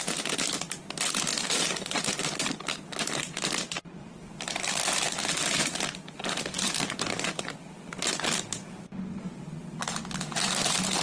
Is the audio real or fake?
real